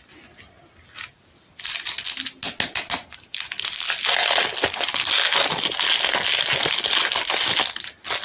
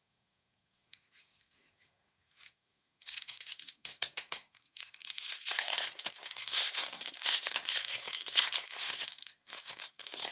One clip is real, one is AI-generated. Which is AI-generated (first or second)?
second